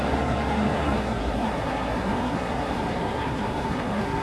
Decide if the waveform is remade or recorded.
remade